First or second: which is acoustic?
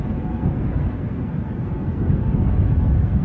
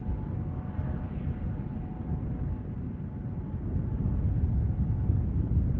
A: second